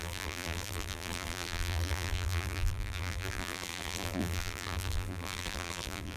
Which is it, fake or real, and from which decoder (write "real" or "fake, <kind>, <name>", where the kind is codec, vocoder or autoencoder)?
fake, vocoder, BigVGAN v2